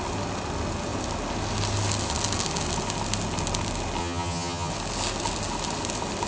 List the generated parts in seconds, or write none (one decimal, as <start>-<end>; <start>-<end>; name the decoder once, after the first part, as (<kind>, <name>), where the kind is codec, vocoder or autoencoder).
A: 4.0-4.7 (vocoder, HiFi-GAN)